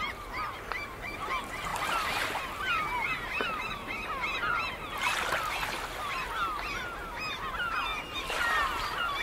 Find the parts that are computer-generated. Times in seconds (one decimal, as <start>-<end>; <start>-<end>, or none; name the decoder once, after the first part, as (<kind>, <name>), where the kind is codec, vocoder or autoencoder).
7.9-8.4 (vocoder, BigVGAN v2)